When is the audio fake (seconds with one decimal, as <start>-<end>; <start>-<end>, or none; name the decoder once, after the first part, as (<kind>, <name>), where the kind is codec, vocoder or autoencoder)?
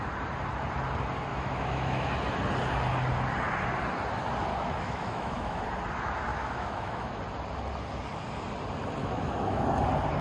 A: 1.3-2.1 (autoencoder, DAC-VAE); 4.5-5.6; 6.3-7.2; 9.0-9.6